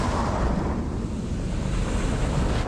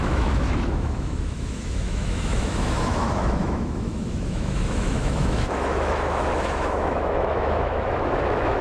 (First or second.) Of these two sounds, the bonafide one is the first